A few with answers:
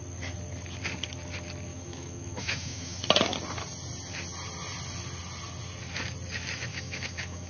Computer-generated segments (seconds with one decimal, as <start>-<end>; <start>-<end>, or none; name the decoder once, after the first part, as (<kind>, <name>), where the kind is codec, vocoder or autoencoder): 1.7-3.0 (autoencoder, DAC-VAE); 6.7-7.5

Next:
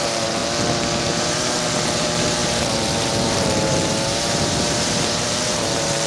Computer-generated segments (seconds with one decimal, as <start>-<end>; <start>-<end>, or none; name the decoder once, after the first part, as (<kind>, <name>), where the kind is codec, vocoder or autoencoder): 0.0-0.4 (vocoder, BigVGAN v2); 1.0-6.1

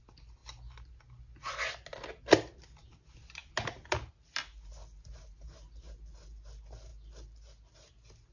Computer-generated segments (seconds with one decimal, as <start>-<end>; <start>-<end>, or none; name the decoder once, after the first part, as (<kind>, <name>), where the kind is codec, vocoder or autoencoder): none